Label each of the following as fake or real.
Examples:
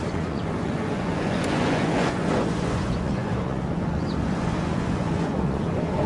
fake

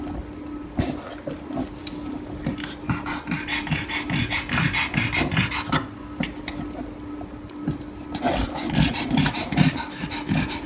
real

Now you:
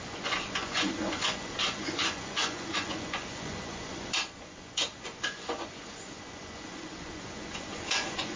fake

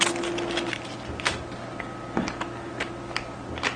real